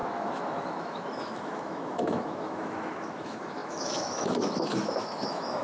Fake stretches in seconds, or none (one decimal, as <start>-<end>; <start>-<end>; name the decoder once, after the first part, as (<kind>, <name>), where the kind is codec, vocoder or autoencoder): 0.0-5.6 (autoencoder, DAC-VAE)